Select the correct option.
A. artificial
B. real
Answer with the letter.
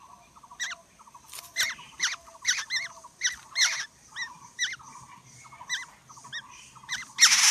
B